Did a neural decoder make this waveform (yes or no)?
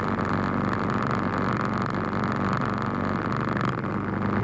no